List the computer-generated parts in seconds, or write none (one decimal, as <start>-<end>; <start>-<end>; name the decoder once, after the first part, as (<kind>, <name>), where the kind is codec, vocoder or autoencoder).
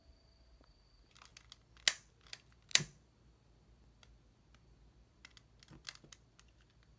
none